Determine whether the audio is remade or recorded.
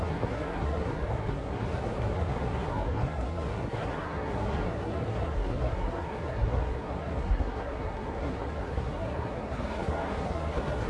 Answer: remade